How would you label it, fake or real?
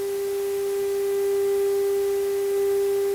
real